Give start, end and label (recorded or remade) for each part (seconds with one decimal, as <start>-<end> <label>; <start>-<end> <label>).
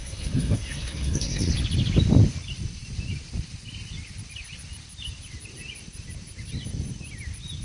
0.0-1.5 remade; 1.5-7.6 recorded